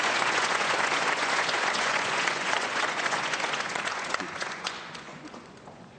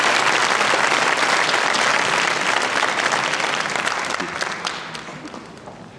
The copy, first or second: first